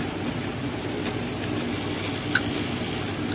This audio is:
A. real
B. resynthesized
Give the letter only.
A